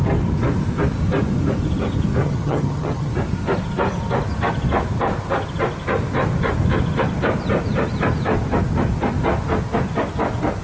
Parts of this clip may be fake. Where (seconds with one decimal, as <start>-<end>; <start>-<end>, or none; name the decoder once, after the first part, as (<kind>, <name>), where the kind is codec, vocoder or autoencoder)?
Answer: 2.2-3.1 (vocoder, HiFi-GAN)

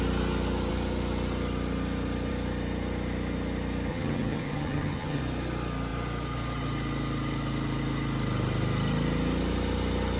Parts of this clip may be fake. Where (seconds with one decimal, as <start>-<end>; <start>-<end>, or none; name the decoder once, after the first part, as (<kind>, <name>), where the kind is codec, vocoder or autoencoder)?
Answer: 3.9-5.2 (vocoder, HiFi-GAN)

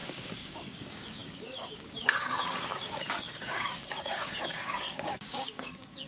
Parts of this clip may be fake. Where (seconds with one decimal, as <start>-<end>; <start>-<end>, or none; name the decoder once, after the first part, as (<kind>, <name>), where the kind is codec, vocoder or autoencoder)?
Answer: 0.0-6.1 (codec, DAC)